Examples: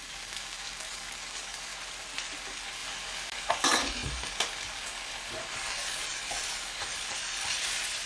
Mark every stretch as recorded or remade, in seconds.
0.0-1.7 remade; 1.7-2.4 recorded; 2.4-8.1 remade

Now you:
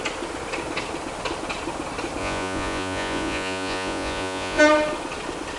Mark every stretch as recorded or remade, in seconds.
0.0-2.2 recorded; 2.2-4.6 remade; 4.6-5.6 recorded

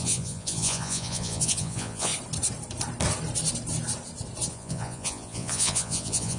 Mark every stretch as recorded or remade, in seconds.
0.0-2.1 remade; 2.1-4.5 recorded; 4.5-6.4 remade

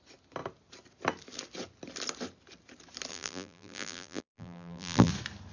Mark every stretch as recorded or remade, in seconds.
0.0-3.1 recorded; 3.1-5.1 remade; 5.1-5.5 recorded